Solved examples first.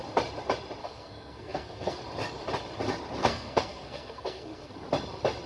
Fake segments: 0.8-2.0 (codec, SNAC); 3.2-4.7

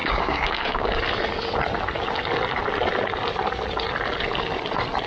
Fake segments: 0.0-1.0 (codec, DAC)

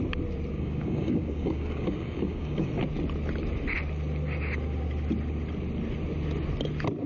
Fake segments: 0.5-2.7 (codec, DAC)